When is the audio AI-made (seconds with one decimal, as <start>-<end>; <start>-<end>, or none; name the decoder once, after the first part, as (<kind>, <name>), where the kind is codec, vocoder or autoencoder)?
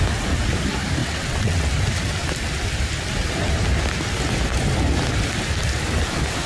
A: 1.0-1.7 (vocoder, WaveNeXt)